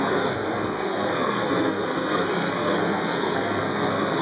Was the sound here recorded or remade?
remade